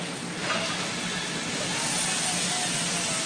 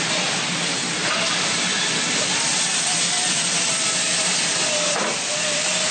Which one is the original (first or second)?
first